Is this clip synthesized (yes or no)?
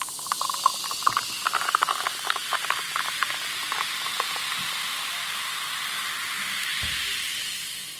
yes